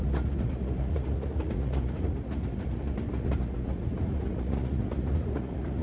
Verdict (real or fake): fake